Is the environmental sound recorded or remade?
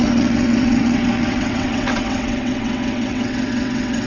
remade